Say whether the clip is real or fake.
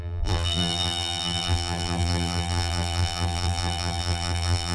fake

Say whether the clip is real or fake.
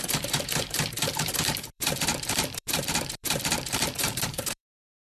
fake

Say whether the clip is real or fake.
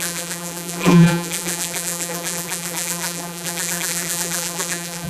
fake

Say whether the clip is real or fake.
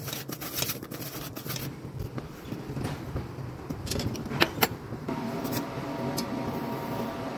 fake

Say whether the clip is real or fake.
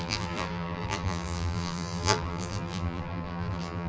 fake